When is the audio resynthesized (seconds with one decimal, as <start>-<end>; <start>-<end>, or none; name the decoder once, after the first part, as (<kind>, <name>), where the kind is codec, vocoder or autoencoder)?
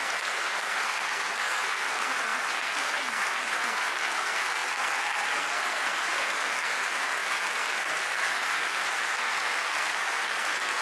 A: 0.0-10.8 (codec, SNAC)